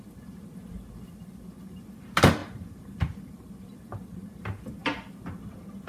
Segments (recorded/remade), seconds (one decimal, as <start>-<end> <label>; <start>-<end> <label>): 0.0-2.4 recorded; 2.4-3.9 remade; 3.9-4.8 recorded; 4.8-5.3 remade; 5.3-5.9 recorded